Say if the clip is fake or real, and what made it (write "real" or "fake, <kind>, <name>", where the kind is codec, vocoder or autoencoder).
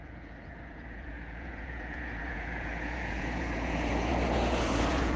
fake, vocoder, Vocos